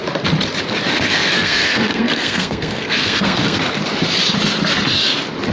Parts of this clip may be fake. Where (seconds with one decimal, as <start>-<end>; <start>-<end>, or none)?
0.9-3.6